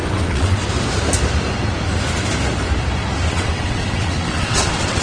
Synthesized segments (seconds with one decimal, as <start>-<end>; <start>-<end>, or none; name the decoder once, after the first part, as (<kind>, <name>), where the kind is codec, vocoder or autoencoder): 0.0-0.6 (vocoder, WaveNeXt); 3.3-5.0